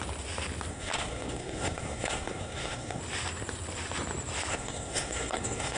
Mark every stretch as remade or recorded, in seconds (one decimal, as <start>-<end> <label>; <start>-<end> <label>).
0.0-0.7 recorded; 0.7-3.0 remade; 3.0-4.5 recorded; 4.5-5.8 remade